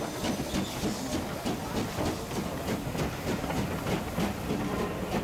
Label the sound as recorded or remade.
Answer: recorded